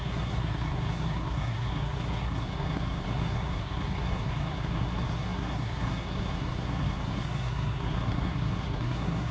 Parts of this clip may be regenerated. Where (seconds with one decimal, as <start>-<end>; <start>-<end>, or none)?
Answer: 0.0-9.3